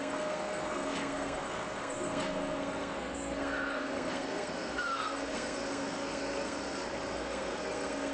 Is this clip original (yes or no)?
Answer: no